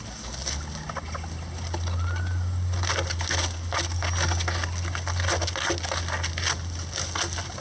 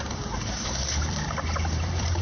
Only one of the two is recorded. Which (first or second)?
first